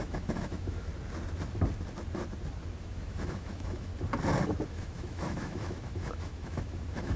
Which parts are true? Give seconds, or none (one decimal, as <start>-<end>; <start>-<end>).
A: 0.9-2.8; 3.9-4.7